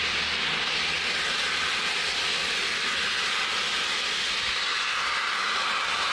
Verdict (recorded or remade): recorded